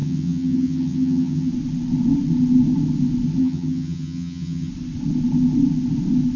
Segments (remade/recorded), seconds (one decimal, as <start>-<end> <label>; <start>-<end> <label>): 0.0-1.5 remade; 1.5-3.4 recorded; 3.4-4.7 remade; 4.7-6.4 recorded